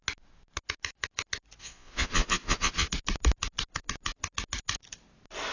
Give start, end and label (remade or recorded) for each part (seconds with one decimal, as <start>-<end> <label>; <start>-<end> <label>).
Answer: 0.0-1.6 recorded; 1.6-2.9 remade; 2.9-5.5 recorded